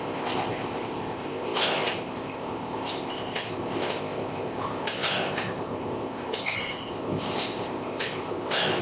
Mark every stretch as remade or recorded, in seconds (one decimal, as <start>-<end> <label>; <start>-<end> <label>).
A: 0.0-8.8 remade